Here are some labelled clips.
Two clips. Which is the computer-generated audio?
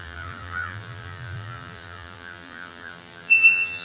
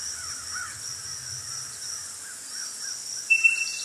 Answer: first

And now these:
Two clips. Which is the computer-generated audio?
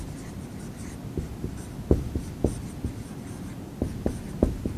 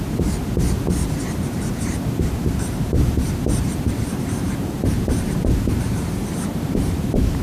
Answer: second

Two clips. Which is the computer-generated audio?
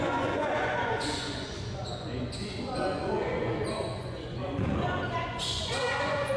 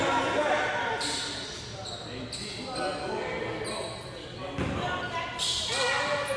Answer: first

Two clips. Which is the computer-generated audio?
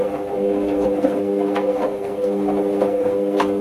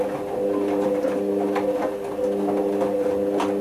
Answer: first